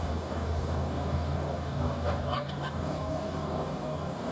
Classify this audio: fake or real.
fake